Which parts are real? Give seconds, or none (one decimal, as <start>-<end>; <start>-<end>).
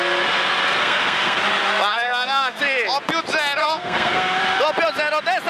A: 0.0-0.8; 1.4-1.9; 2.6-3.6; 4.4-5.5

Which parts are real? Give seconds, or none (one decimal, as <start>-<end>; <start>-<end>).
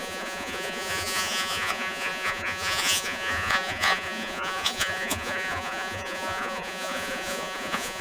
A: none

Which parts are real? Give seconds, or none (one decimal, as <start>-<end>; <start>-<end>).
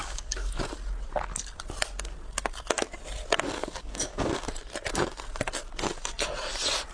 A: 0.6-3.6; 4.3-6.9